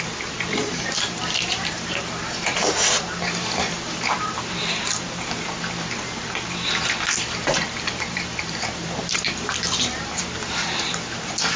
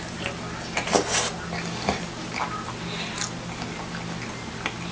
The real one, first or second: second